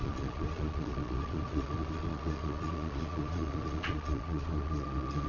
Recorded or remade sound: remade